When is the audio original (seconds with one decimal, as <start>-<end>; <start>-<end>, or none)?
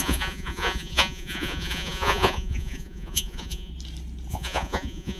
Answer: 3.7-4.3